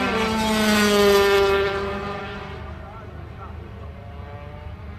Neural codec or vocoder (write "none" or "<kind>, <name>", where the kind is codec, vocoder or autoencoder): none